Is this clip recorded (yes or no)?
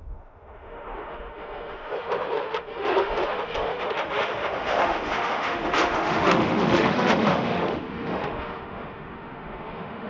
no